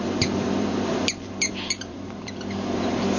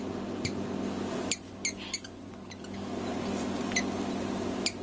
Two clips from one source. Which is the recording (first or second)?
second